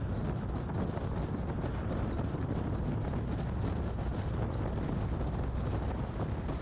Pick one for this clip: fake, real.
real